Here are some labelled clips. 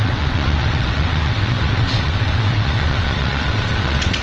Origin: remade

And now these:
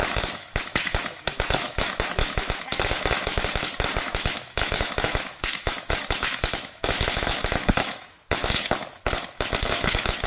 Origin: remade